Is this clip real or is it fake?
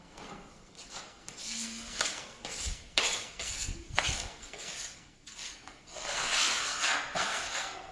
fake